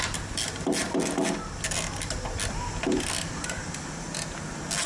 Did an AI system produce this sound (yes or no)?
no